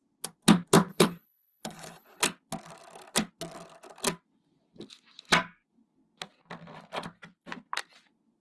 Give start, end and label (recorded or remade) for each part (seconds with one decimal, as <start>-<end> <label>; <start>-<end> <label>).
0.0-0.9 recorded; 0.9-2.2 remade; 2.2-8.4 recorded